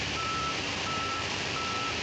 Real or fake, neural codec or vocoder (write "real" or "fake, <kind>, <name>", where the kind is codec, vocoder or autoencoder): fake, vocoder, BigVGAN v2